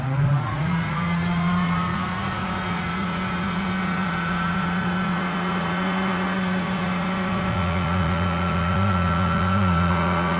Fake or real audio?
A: fake